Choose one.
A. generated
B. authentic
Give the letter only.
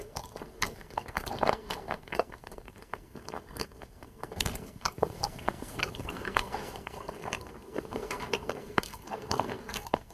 A